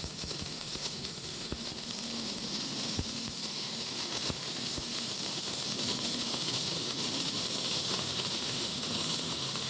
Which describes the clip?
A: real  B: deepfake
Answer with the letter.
B